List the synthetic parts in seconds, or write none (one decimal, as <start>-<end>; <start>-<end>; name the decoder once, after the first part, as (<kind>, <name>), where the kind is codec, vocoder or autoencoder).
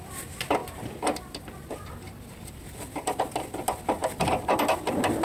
none